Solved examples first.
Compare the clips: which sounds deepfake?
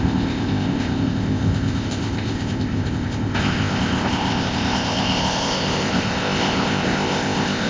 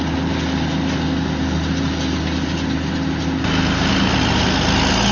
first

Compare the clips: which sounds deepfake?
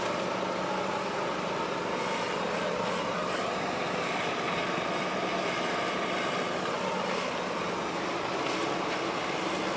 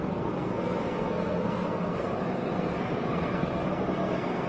second